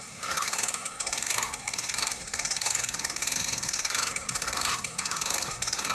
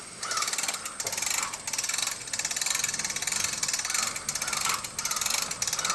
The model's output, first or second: first